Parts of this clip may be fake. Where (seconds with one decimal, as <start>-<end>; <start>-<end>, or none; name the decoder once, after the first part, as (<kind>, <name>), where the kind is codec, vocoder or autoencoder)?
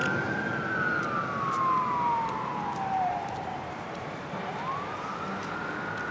2.5-4.4 (vocoder, BigVGAN v2)